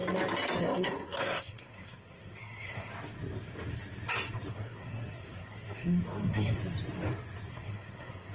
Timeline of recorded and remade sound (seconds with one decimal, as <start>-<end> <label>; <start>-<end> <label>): 0.0-0.6 recorded; 0.6-2.9 remade; 2.9-4.5 recorded; 4.5-6.6 remade; 6.6-7.5 recorded; 7.5-8.3 remade